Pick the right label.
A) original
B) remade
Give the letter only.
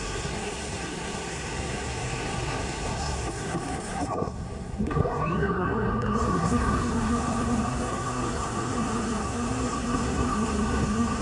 B